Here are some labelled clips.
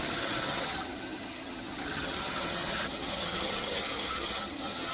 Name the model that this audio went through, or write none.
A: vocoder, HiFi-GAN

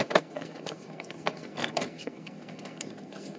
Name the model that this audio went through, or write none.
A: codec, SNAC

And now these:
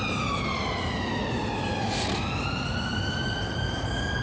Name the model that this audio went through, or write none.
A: none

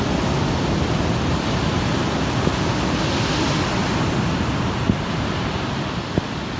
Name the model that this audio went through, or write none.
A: none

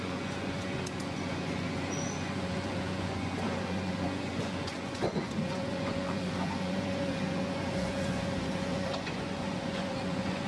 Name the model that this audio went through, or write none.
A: vocoder, Vocos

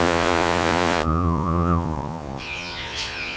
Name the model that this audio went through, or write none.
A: vocoder, Vocos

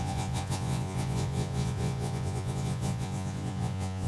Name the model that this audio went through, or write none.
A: vocoder, Vocos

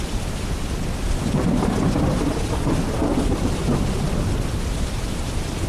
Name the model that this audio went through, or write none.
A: vocoder, BigVGAN v2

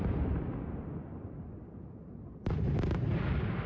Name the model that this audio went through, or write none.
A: none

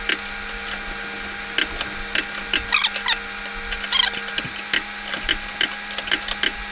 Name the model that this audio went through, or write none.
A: none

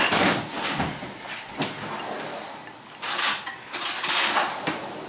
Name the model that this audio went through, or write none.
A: none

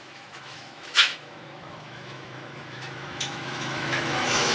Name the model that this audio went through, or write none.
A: autoencoder, DAC-VAE